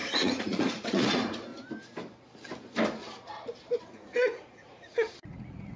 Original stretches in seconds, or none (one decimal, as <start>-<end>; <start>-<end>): 1.5-3.8